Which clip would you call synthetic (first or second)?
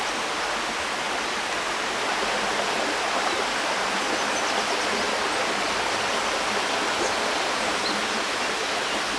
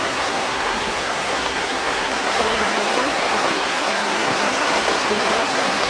second